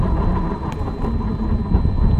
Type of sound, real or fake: real